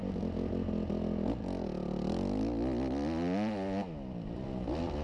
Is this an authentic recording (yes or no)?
yes